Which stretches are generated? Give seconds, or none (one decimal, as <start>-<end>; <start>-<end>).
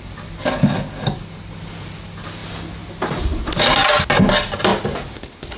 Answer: 0.0-2.4; 3.1-3.8; 4.3-5.6